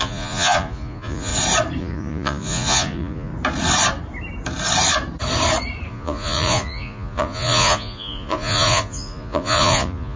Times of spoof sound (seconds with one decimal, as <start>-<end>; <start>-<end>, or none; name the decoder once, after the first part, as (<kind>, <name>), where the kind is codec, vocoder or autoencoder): 0.0-1.3 (vocoder, Vocos); 1.8-3.3; 5.9-10.2